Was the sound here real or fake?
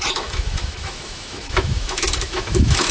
fake